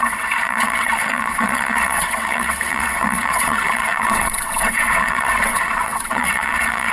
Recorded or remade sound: remade